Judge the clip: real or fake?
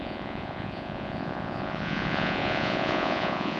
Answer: fake